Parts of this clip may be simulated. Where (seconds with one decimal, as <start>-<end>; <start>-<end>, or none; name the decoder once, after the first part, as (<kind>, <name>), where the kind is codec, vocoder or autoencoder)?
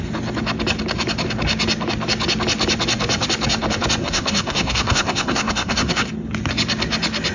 4.0-6.1 (codec, SNAC)